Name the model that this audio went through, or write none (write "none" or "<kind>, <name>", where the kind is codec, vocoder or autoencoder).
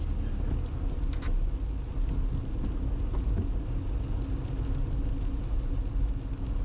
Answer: none